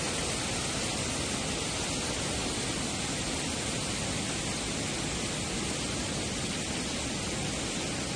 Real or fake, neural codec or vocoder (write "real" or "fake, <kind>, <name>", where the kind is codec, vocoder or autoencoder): real